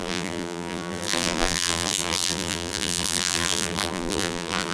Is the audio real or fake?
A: fake